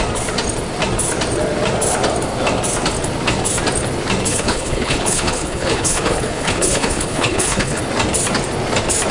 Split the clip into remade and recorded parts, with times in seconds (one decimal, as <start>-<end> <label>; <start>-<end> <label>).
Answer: 0.0-4.3 recorded; 4.3-7.8 remade; 7.8-9.1 recorded